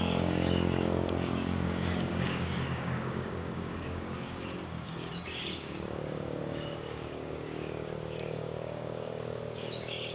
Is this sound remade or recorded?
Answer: remade